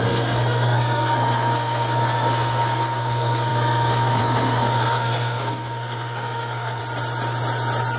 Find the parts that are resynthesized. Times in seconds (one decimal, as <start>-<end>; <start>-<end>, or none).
0.0-6.8